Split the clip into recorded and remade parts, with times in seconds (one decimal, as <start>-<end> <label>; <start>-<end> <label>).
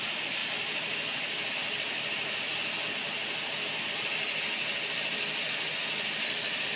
0.0-0.4 remade; 0.4-1.5 recorded; 1.5-3.2 remade; 3.2-6.8 recorded